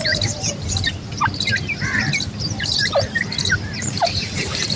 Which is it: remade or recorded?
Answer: remade